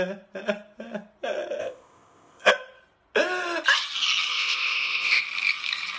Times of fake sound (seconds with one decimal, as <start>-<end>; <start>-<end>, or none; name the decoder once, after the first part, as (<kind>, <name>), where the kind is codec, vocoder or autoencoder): 1.6-2.5 (codec, ZipCodec); 4.3-5.2